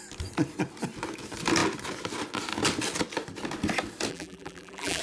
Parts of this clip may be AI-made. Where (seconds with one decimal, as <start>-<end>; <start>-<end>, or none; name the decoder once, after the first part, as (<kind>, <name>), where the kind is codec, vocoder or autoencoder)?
4.1-5.0 (vocoder, BigVGAN v2)